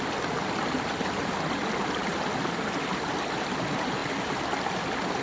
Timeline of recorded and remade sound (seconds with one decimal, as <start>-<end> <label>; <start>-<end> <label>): 0.0-5.2 recorded